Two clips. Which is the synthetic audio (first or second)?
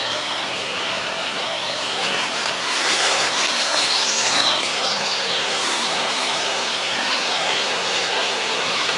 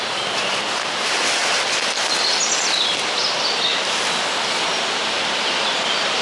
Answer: first